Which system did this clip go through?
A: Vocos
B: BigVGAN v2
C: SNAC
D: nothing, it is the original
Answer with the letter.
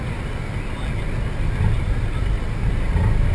D